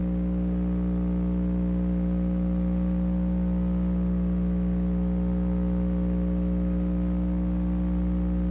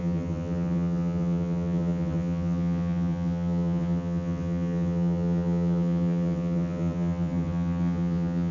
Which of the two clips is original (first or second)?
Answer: first